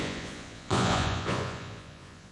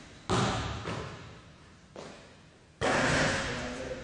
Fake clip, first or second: first